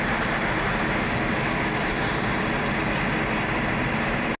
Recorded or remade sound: recorded